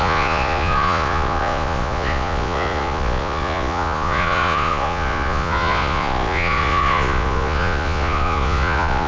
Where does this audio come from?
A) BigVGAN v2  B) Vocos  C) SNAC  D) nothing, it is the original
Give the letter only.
B